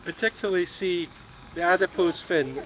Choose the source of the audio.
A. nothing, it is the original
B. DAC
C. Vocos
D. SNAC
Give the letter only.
B